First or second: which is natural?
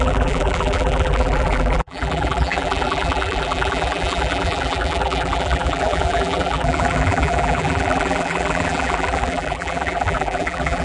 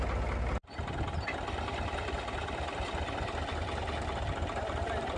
second